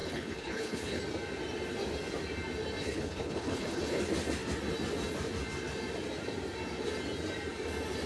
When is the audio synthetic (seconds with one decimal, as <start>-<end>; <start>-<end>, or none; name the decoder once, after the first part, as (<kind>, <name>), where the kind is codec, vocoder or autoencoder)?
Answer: 0.0-1.0 (codec, HILCodec); 2.8-4.0